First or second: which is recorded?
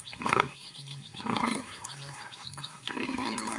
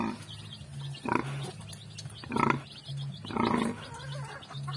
second